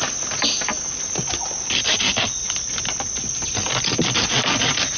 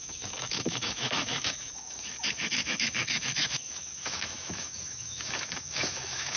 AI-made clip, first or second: second